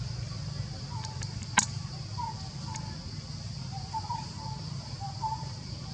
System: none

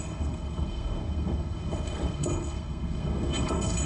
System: codec, SNAC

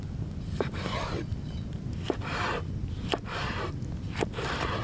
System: none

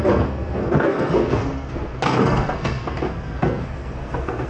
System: codec, SNAC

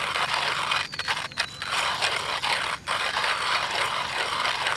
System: none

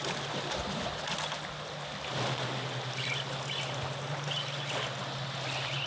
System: none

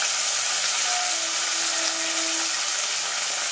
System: none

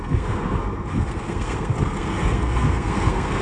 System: codec, SNAC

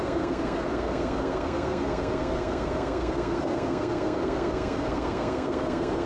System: codec, SNAC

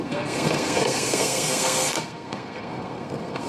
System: codec, SNAC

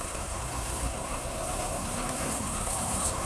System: codec, SNAC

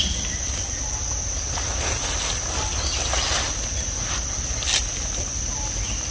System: none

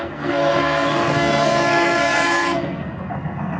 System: codec, SNAC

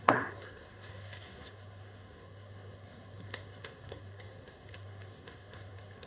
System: codec, SNAC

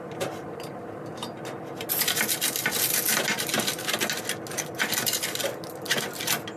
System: none